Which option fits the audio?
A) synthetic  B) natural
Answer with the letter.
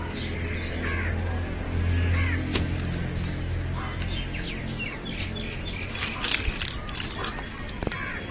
B